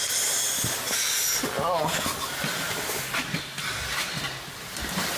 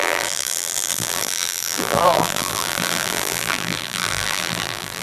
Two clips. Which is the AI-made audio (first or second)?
second